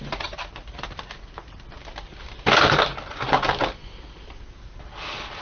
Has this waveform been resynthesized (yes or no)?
no